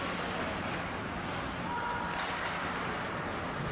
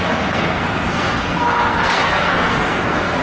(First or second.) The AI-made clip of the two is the second